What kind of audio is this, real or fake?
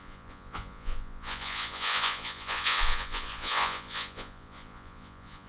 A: fake